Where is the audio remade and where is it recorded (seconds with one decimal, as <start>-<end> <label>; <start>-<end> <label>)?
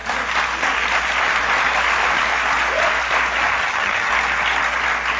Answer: 0.0-3.6 recorded; 3.6-4.1 remade; 4.1-5.2 recorded